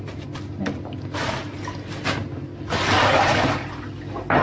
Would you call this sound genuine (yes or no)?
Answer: yes